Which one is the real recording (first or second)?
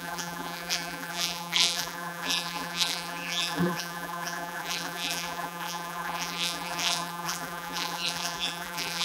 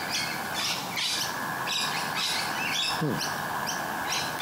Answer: second